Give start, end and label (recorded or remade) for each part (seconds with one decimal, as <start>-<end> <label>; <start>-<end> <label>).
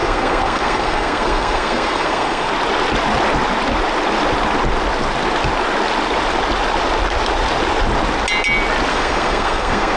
0.0-2.5 remade; 2.5-8.9 recorded; 8.9-10.0 remade